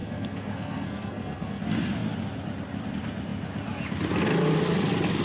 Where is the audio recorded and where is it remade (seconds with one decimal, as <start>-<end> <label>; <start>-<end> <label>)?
0.0-1.6 remade; 1.6-5.2 recorded